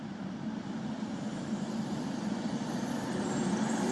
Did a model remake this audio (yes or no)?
yes